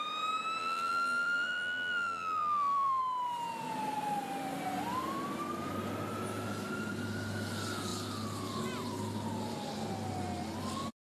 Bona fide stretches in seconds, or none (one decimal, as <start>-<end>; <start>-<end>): 0.0-0.6; 3.0-11.0